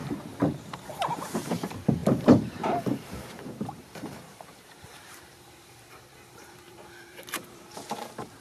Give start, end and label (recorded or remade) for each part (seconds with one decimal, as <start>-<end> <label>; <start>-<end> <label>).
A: 0.0-8.4 remade